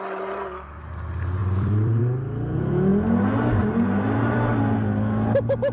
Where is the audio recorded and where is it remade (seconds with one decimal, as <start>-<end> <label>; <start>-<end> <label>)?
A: 0.0-1.4 recorded; 1.4-2.0 remade; 2.0-5.7 recorded